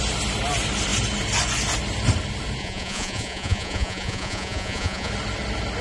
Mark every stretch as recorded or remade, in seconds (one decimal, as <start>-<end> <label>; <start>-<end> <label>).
0.0-2.6 recorded; 2.6-5.1 remade; 5.1-5.8 recorded